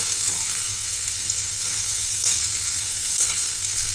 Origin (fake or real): fake